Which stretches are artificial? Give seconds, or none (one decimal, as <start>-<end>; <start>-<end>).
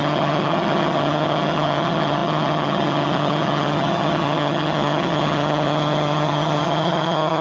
0.0-7.4